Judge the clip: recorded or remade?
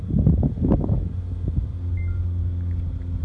recorded